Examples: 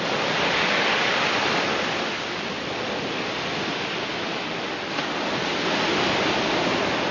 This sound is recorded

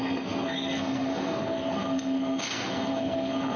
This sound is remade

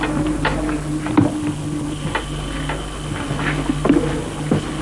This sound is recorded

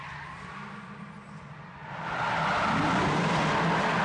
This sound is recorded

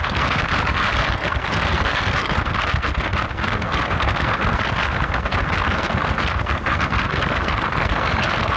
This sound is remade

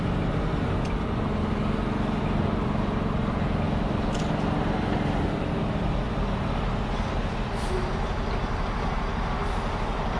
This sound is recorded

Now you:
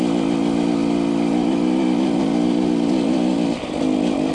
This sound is recorded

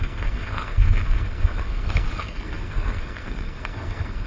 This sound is remade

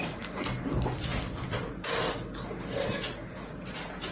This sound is recorded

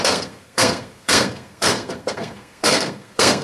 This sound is remade